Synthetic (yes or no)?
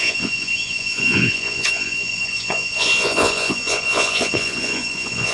yes